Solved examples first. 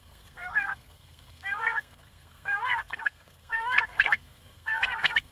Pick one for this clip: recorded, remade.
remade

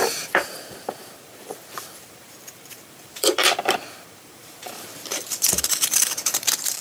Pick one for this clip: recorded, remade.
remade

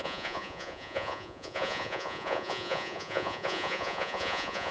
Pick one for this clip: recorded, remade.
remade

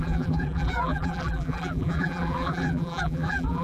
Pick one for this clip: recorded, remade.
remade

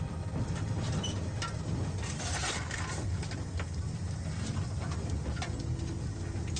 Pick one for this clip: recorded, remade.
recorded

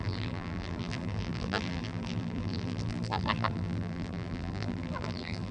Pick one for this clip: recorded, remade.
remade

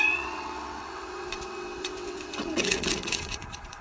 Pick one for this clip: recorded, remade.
remade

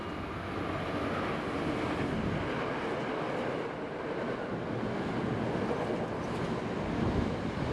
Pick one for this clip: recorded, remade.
recorded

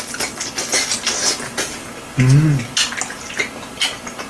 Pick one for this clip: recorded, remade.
recorded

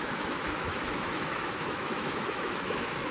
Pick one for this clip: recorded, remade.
remade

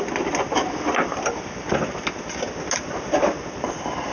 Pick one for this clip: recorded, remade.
recorded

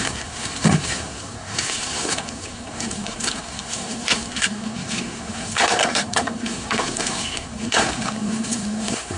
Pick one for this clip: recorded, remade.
remade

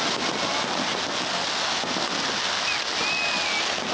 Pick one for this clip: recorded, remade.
recorded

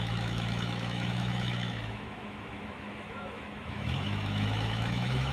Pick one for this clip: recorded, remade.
remade